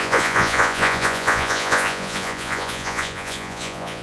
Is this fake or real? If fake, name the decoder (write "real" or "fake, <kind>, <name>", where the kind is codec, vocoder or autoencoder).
fake, vocoder, Vocos